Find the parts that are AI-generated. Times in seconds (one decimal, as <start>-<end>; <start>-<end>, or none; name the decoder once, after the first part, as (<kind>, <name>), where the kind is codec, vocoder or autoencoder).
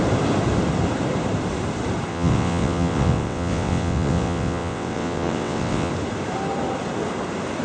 2.1-5.9 (vocoder, WaveNeXt)